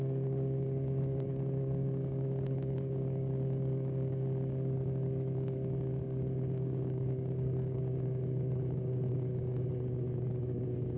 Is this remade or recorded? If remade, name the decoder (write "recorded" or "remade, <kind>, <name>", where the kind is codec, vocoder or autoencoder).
remade, codec, DAC